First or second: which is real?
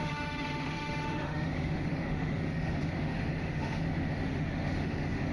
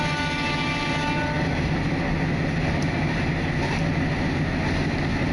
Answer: second